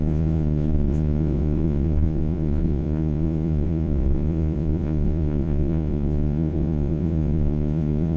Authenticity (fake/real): fake